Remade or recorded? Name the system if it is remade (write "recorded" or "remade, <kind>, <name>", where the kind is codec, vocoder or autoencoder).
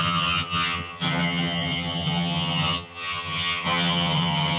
remade, vocoder, HiFi-GAN